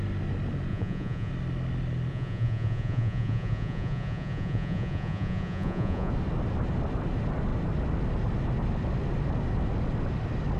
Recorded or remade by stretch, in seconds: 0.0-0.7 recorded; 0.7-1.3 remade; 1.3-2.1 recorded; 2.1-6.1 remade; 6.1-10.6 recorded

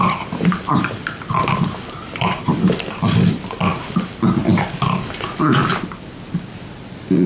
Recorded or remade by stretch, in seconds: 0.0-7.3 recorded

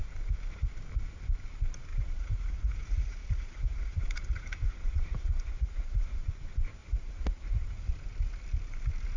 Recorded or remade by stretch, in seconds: 0.0-1.9 recorded; 1.9-6.3 remade; 6.3-6.8 recorded; 6.8-7.9 remade; 7.9-9.2 recorded